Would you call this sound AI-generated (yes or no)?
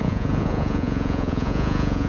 yes